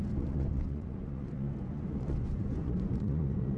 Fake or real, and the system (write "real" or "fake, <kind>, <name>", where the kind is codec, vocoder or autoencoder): fake, vocoder, Vocos